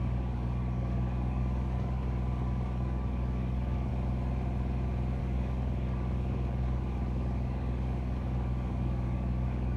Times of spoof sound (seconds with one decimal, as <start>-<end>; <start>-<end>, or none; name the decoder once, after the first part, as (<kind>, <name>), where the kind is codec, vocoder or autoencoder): 0.0-3.9 (codec, DAC); 5.2-9.8

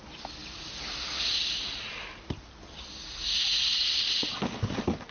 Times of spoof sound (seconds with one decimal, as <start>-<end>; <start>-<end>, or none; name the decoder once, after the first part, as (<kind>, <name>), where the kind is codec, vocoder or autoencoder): none

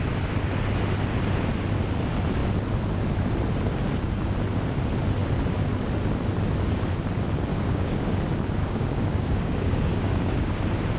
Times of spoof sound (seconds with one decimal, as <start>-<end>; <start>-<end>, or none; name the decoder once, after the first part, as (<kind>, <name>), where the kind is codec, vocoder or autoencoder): 7.5-8.2 (codec, DAC); 8.6-10.6